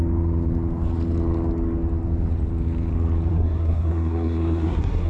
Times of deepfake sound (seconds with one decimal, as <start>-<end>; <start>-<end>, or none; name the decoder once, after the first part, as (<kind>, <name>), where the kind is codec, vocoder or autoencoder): 3.3-5.1 (codec, SNAC)